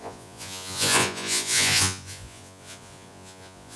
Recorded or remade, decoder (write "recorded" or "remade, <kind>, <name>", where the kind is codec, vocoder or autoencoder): remade, vocoder, Vocos